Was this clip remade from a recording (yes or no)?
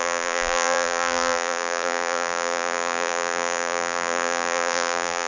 yes